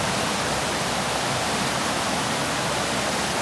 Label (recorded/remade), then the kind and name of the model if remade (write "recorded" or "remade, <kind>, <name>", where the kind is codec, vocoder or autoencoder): recorded